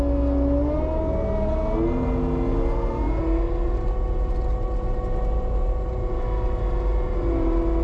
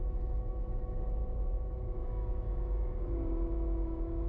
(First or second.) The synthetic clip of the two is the second